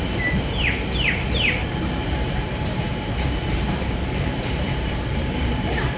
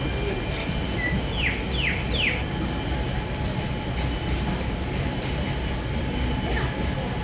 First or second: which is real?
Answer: second